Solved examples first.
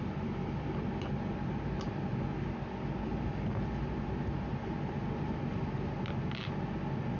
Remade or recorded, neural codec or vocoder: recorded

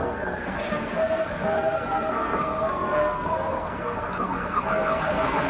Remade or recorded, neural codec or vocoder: remade, codec, SNAC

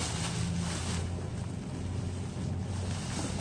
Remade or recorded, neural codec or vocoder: recorded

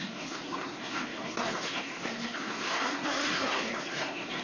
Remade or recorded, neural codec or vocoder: remade, codec, SNAC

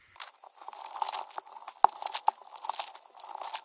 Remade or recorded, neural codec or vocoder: recorded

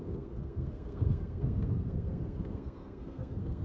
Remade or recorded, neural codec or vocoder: remade, codec, SNAC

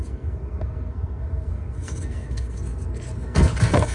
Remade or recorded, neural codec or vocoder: remade, codec, SNAC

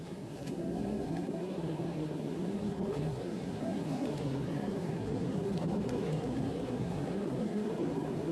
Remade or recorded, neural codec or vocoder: remade, codec, SNAC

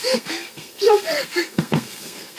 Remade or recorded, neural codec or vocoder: remade, codec, SNAC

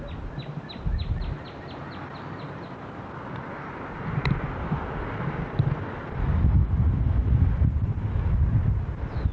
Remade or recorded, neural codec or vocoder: recorded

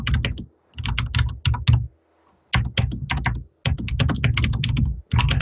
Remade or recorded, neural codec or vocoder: recorded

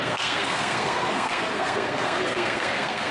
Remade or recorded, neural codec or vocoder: remade, codec, SNAC